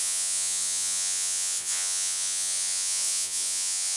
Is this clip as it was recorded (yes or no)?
no